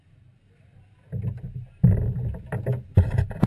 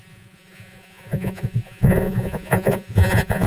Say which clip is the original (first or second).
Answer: first